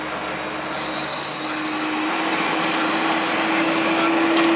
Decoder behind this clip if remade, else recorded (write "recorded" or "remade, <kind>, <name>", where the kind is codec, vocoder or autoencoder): recorded